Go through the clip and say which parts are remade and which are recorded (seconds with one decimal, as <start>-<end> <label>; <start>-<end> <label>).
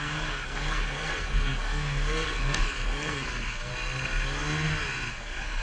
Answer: 0.0-3.7 remade; 3.7-5.1 recorded; 5.1-5.6 remade